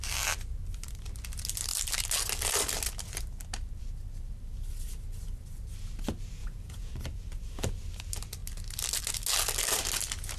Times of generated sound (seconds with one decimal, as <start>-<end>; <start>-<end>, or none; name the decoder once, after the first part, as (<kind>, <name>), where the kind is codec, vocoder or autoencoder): 6.4-6.9 (vocoder, Vocos)